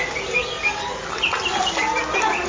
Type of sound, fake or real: real